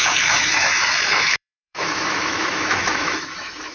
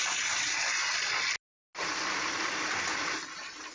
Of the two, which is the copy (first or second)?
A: first